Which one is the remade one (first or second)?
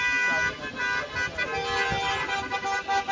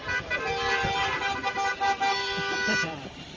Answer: second